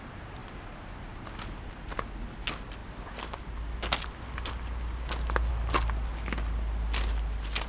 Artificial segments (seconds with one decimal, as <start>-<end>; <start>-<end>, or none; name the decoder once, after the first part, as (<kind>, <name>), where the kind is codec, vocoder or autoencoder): none

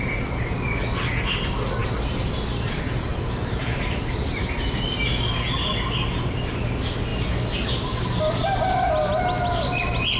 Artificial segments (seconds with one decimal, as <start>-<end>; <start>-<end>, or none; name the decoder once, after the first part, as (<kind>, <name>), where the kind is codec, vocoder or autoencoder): 3.1-4.4 (vocoder, BigVGAN v2)

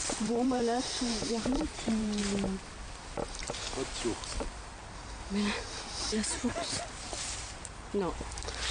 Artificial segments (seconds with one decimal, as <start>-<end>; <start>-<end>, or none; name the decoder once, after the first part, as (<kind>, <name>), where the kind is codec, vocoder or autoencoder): 0.0-2.2 (vocoder, BigVGAN v2); 6.8-8.7